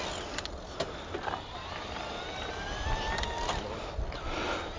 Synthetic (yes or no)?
no